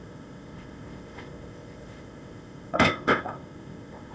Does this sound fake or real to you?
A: fake